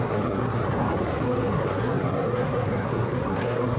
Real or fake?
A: fake